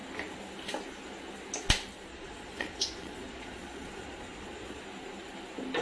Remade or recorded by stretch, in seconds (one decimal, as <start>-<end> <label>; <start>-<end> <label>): 0.0-2.1 recorded; 2.1-4.8 remade; 4.8-5.8 recorded